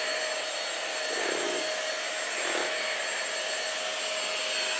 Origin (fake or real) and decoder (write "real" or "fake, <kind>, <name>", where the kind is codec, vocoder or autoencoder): real